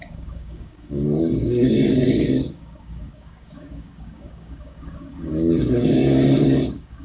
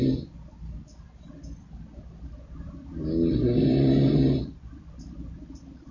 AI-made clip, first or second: first